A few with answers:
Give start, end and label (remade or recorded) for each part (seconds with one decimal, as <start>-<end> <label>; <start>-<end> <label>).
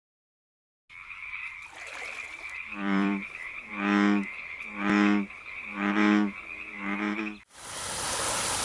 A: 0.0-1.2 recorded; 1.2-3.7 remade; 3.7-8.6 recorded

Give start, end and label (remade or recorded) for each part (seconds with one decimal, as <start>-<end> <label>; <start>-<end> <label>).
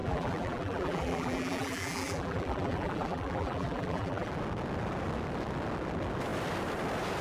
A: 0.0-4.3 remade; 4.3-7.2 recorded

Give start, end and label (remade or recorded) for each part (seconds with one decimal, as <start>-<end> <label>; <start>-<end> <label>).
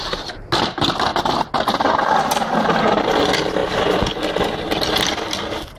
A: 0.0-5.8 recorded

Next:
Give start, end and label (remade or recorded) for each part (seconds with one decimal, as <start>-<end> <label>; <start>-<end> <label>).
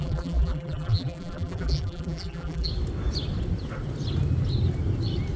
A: 0.0-2.7 remade; 2.7-5.4 recorded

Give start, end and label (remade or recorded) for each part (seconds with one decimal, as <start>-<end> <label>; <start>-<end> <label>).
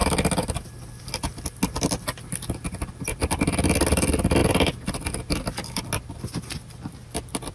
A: 0.0-7.5 recorded